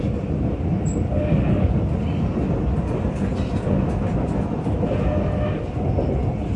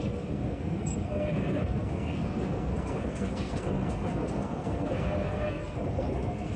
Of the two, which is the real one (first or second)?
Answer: first